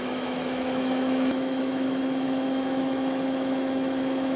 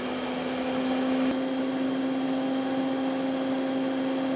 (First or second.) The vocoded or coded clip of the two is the first